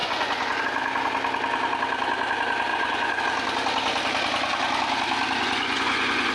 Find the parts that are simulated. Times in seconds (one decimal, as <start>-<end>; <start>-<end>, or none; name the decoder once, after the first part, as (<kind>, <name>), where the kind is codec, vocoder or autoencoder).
0.0-0.6 (vocoder, Vocos); 2.7-3.2; 5.4-6.3